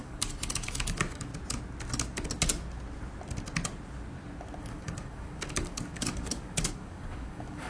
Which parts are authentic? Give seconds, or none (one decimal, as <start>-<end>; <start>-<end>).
1.3-4.6